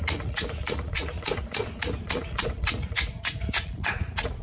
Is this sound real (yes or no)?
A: no